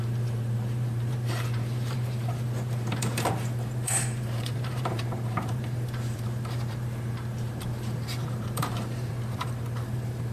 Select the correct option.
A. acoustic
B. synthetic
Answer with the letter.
B